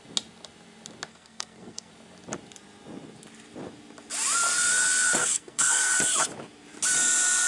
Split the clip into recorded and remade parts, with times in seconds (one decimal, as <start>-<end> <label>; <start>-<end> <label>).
0.0-1.1 recorded; 1.1-1.9 remade; 1.9-5.2 recorded; 5.2-5.9 remade; 5.9-7.5 recorded